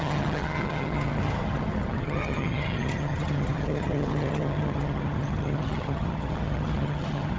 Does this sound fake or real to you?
fake